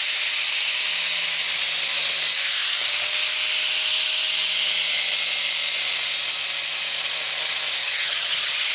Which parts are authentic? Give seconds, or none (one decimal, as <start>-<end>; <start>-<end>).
0.0-7.8